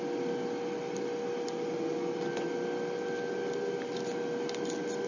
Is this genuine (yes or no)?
yes